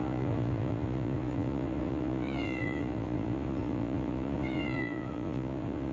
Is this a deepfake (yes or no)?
yes